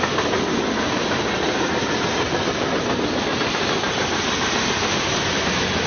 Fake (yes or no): no